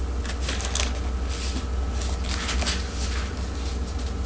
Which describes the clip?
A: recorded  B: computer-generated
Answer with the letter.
A